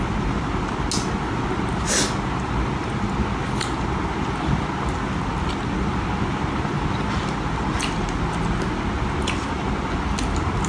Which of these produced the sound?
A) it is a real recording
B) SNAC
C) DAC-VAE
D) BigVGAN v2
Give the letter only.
A